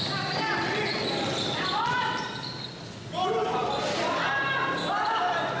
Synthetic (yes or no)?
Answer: no